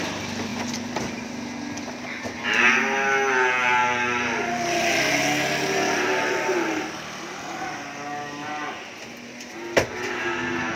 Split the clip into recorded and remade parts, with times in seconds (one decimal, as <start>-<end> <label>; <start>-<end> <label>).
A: 0.0-3.8 recorded; 3.8-8.7 remade; 8.7-10.8 recorded